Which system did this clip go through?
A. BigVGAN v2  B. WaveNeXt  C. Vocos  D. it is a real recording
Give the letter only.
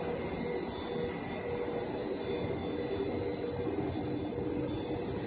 D